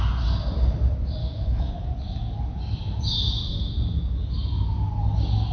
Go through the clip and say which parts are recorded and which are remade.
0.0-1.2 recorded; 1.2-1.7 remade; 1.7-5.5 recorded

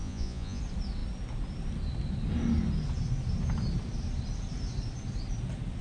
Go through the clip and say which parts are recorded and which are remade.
0.0-0.6 remade; 0.6-5.8 recorded

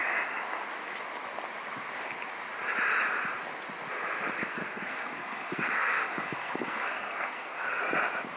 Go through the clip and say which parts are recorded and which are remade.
0.0-4.4 recorded; 4.4-7.8 remade; 7.8-8.4 recorded